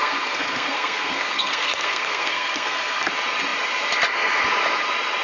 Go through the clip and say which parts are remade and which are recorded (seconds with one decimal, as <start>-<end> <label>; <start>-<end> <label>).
0.0-3.1 remade; 3.1-5.2 recorded